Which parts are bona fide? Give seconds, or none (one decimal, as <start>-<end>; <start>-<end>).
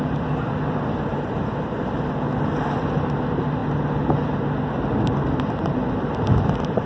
0.0-6.9